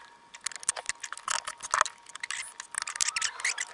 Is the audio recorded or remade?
recorded